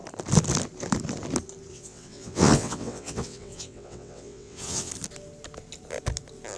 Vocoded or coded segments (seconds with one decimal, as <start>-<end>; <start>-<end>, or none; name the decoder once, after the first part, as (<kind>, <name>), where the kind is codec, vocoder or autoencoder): 1.7-4.9 (vocoder, WaveNeXt)